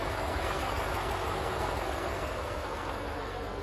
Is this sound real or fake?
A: fake